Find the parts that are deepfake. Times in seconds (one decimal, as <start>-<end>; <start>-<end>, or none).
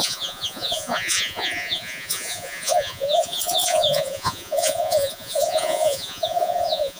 0.0-7.0